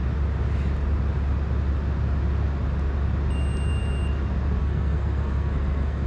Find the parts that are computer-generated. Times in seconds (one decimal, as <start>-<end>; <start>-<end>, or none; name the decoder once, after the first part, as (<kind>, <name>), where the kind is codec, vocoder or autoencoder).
4.6-6.1 (codec, SNAC)